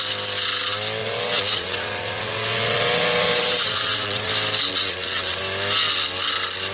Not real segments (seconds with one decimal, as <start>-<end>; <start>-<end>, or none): 1.0-4.3; 4.7-5.4